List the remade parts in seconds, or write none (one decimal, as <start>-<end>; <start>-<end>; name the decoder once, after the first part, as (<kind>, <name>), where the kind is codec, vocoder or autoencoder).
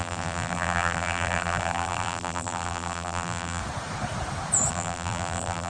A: 0.0-3.6 (vocoder, BigVGAN v2); 4.7-5.7